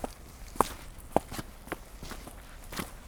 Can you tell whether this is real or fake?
real